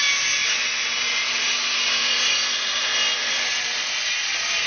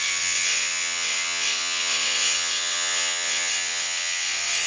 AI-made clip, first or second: second